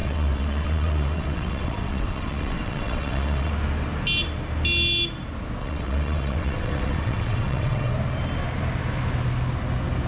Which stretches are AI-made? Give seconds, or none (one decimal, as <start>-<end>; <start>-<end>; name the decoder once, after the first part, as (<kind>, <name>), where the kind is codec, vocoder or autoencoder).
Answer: 0.0-3.5 (vocoder, WaveNeXt); 5.6-7.9